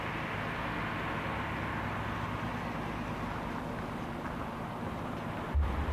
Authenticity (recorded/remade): recorded